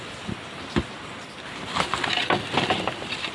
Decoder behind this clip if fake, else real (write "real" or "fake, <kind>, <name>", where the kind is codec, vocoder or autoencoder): real